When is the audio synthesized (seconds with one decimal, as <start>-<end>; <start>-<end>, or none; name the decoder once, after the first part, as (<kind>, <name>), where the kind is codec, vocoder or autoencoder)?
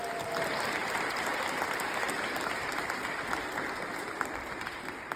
none